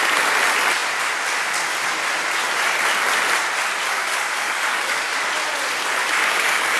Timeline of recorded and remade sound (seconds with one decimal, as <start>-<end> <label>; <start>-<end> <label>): 0.0-3.9 recorded; 3.9-5.1 remade; 5.1-6.0 recorded; 6.0-6.8 remade